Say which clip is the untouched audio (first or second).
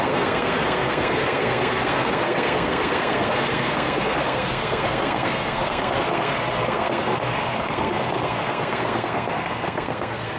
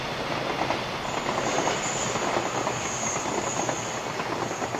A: second